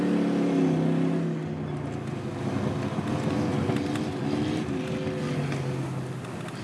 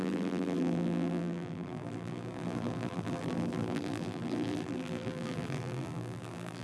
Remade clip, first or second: second